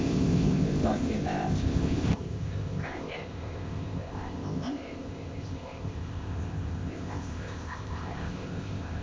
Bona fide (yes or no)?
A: no